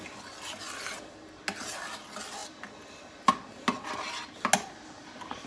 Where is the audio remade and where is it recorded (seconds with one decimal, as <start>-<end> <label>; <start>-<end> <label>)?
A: 0.0-5.5 recorded